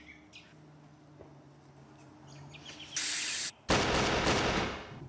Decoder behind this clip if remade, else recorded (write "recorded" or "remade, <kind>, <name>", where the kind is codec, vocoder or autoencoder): recorded